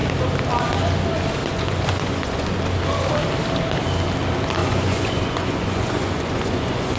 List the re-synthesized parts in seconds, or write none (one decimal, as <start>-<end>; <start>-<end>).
1.4-2.6; 4.6-7.0